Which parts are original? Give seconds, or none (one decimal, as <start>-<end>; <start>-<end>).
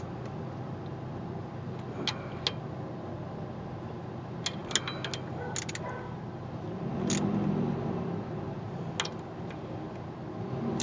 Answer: 0.0-10.8